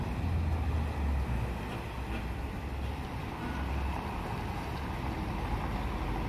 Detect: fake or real real